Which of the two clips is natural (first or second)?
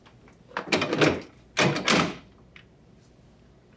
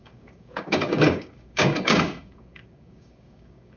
first